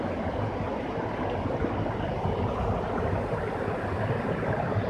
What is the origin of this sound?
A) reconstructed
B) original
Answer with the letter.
B